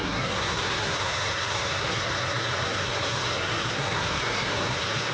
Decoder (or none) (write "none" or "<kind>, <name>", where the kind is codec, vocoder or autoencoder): codec, SNAC